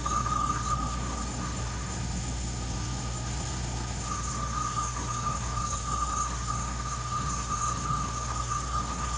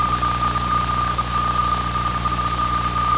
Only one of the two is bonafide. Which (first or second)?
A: second